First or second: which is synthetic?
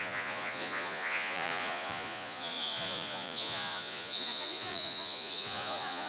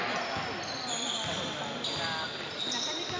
first